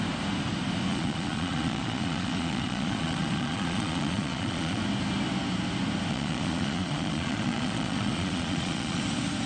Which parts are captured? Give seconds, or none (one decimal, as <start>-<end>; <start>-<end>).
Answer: 0.0-0.9; 4.8-6.1; 9.0-9.5